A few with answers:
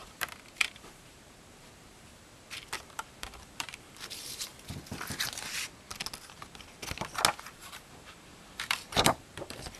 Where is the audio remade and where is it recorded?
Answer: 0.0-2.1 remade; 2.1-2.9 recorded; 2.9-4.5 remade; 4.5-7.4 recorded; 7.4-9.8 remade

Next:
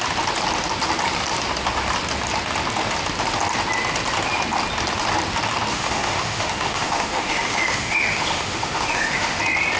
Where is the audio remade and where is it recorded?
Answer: 0.0-5.7 recorded; 5.7-9.4 remade; 9.4-9.8 recorded

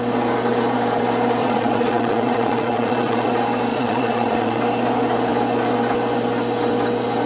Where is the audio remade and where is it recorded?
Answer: 0.0-1.4 recorded; 1.4-3.3 remade; 3.3-3.7 recorded; 3.7-4.6 remade; 4.6-7.3 recorded

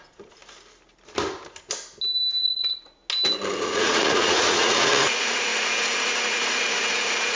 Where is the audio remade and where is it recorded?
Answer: 0.0-0.4 remade; 0.4-2.4 recorded; 2.4-3.0 remade; 3.0-3.6 recorded; 3.6-7.4 remade

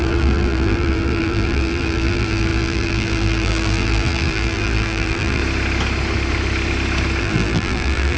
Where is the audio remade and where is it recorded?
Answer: 0.0-5.4 remade; 5.4-7.2 recorded; 7.2-8.2 remade

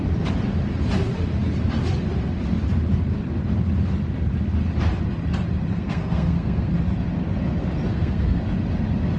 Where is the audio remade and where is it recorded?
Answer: 0.0-5.7 recorded; 5.7-6.7 remade; 6.7-7.9 recorded; 7.9-8.4 remade; 8.4-9.2 recorded